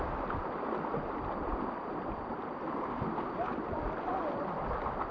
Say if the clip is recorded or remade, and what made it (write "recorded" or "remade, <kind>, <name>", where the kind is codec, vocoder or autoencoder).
recorded